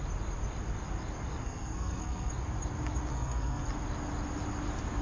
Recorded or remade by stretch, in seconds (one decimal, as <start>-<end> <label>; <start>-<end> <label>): 0.0-1.4 recorded; 1.4-2.3 remade; 2.3-3.1 recorded; 3.1-3.7 remade; 3.7-5.0 recorded